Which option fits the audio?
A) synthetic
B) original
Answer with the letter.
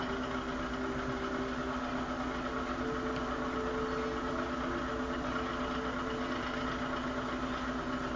B